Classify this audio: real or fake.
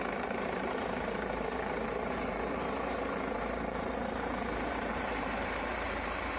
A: fake